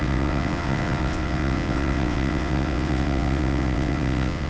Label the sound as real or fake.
fake